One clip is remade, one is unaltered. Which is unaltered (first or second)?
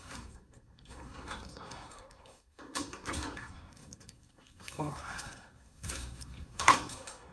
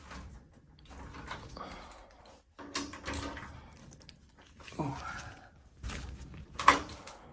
second